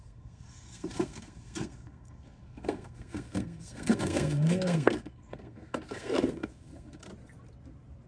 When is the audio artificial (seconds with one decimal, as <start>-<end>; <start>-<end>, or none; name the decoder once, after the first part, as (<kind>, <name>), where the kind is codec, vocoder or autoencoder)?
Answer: 0.0-7.1 (codec, SNAC)